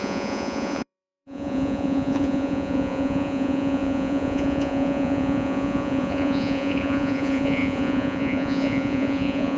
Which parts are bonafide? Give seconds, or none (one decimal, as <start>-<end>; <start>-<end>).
none